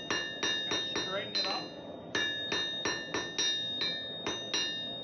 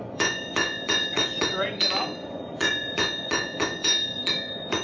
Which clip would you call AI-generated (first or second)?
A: second